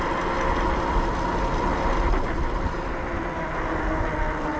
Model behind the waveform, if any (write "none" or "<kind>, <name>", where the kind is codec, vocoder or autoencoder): none